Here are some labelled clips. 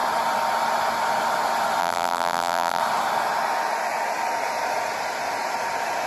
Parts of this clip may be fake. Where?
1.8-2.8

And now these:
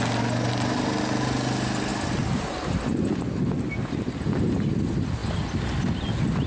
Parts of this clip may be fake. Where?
none

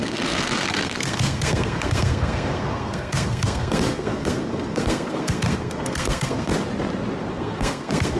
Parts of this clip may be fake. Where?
0.0-6.5; 7.3-8.2